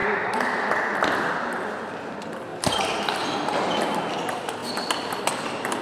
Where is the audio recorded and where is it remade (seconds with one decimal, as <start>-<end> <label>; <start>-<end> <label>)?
0.0-0.7 remade; 0.7-2.5 recorded; 2.5-3.8 remade; 3.8-5.8 recorded